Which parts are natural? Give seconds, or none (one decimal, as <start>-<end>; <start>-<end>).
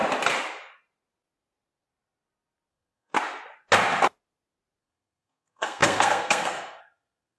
0.0-2.7; 3.1-4.8